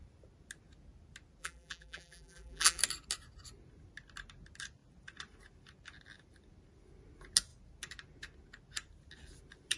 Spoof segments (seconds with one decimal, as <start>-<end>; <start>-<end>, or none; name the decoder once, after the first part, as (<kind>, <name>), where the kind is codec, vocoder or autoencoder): 1.4-2.8 (vocoder, BigVGAN v2)